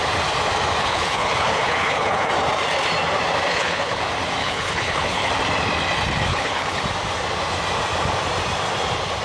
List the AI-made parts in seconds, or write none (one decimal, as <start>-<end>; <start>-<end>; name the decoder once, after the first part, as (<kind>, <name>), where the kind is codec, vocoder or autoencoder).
0.8-2.3 (codec, HILCodec); 3.5-4.0; 4.4-5.3; 6.3-6.8